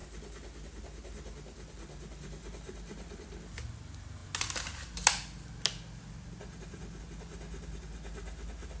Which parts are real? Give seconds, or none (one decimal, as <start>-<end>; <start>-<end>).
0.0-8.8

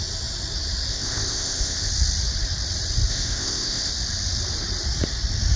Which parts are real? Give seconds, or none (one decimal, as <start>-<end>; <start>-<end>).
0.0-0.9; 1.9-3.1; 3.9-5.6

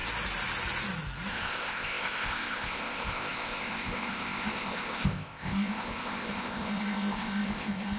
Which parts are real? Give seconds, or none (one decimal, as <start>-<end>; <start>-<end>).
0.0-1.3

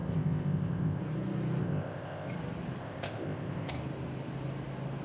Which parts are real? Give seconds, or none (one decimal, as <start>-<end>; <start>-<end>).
1.0-1.6; 2.3-2.8; 3.7-5.0